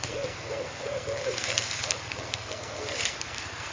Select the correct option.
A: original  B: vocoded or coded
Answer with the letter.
B